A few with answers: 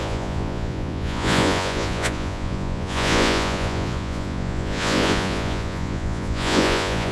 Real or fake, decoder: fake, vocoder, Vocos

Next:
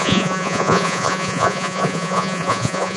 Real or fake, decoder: fake, vocoder, Vocos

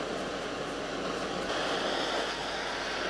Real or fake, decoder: real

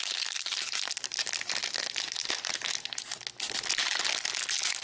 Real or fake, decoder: real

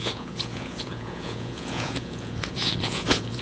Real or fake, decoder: fake, vocoder, Vocos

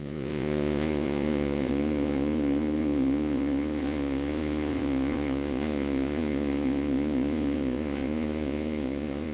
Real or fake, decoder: fake, vocoder, Vocos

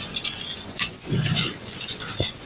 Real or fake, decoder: fake, vocoder, Vocos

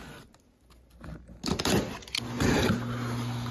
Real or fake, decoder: real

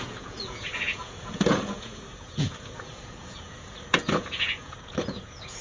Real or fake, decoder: fake, vocoder, Vocos